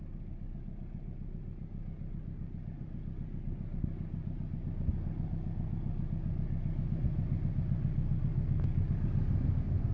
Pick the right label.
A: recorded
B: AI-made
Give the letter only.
A